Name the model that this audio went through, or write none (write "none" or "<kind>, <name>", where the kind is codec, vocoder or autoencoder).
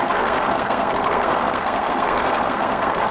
codec, SNAC